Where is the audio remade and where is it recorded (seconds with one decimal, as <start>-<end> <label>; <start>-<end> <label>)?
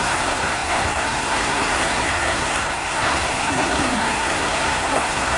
0.0-5.4 remade